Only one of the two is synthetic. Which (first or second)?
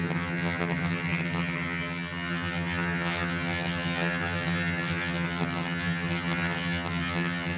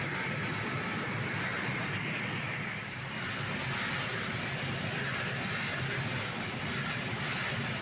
first